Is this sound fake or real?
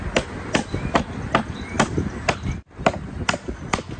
real